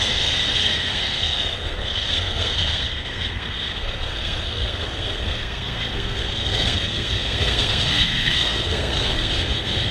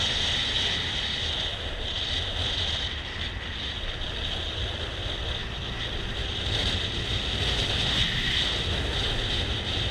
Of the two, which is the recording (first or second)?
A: second